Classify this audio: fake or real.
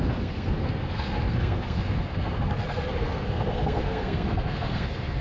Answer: fake